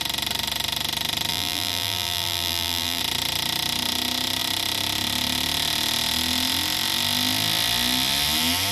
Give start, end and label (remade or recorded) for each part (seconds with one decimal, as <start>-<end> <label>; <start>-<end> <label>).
0.0-1.3 recorded; 1.3-3.0 remade; 3.0-8.7 recorded